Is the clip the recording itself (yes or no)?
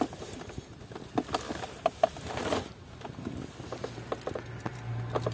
yes